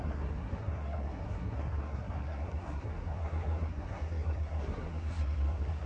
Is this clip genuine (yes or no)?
no